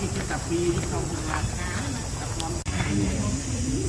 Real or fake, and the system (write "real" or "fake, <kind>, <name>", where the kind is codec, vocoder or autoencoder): real